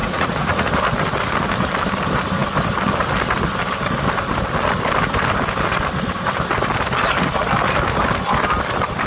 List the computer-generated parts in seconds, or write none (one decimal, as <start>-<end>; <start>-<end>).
0.0-0.7

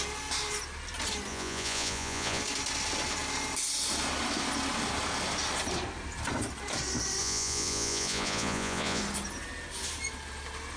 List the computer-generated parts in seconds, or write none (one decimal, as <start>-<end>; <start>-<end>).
1.3-2.4; 7.2-9.0